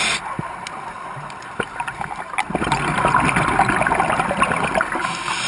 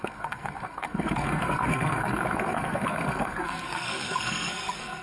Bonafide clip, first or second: first